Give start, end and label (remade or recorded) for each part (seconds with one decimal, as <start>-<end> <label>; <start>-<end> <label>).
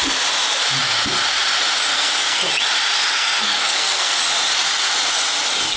0.0-1.9 recorded; 1.9-2.5 remade; 2.5-3.1 recorded; 3.1-4.2 remade; 4.2-5.8 recorded